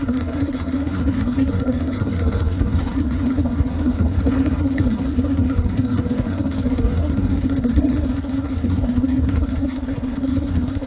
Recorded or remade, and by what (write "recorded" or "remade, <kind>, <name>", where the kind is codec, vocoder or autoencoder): remade, codec, SNAC